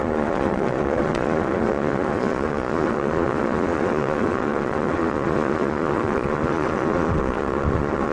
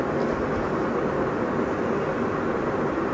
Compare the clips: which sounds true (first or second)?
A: second